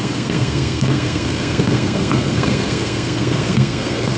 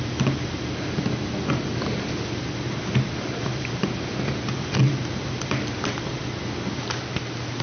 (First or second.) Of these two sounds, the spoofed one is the first